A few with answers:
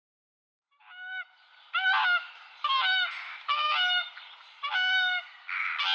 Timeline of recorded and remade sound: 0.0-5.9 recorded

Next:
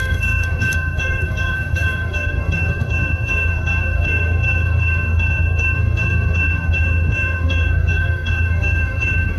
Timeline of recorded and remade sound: 0.0-9.4 remade

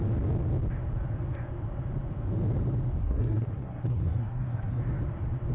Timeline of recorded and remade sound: 0.0-3.0 recorded; 3.0-4.8 remade; 4.8-5.5 recorded

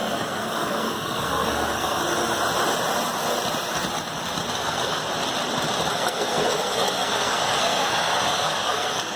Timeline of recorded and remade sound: 0.0-2.0 remade; 2.0-4.5 recorded; 4.5-5.0 remade; 5.0-5.9 recorded; 5.9-9.2 remade

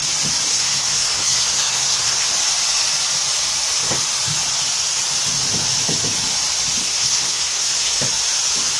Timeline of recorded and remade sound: 0.0-0.5 recorded; 0.5-2.3 remade; 2.3-6.8 recorded; 6.8-8.0 remade; 8.0-8.8 recorded

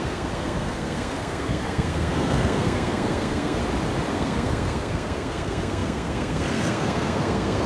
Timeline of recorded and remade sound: 0.0-3.6 remade; 3.6-4.1 recorded; 4.1-7.7 remade

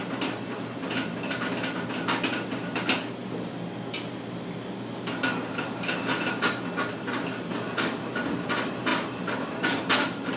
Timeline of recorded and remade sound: 0.0-10.4 recorded